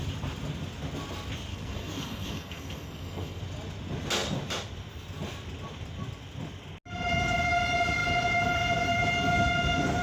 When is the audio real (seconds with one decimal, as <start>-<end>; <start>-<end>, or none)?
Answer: 0.0-1.5; 3.4-10.0